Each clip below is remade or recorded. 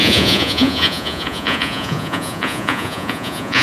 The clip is remade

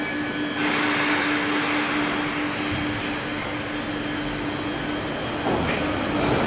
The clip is recorded